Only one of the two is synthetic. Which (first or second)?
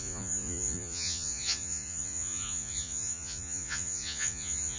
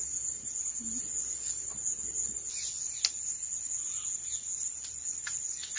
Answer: first